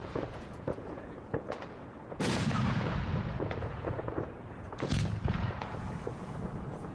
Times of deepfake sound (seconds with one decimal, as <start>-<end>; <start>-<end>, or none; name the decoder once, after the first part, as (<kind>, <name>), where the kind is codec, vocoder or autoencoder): 0.0-6.9 (vocoder, Vocos)